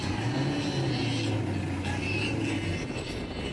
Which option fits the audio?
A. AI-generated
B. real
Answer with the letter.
B